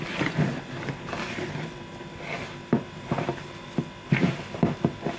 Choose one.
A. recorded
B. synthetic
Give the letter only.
A